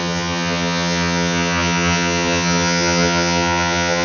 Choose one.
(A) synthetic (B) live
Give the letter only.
A